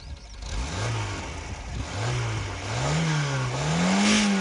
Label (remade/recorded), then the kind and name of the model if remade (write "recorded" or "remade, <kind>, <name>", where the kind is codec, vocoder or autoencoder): recorded